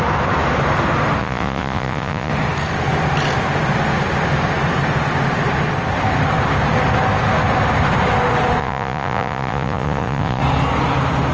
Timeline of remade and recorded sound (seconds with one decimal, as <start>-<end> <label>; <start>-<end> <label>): 0.0-1.2 recorded; 1.2-2.3 remade; 2.3-8.6 recorded; 8.6-10.4 remade; 10.4-11.3 recorded